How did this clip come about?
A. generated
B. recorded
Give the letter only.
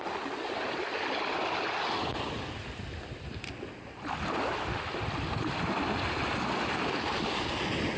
B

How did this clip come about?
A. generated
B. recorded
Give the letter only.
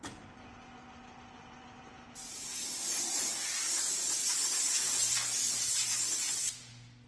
B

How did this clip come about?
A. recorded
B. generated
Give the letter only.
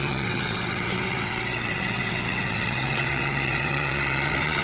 B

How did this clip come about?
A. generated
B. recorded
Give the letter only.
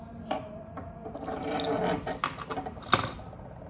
B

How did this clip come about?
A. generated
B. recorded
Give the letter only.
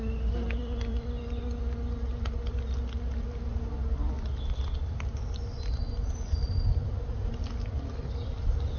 B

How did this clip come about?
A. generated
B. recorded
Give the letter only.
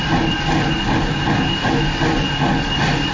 B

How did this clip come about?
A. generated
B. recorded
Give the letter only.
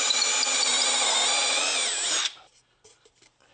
B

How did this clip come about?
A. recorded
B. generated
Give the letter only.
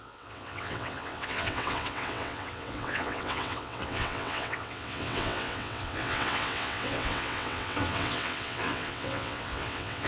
B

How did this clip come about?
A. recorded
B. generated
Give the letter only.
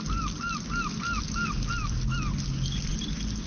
A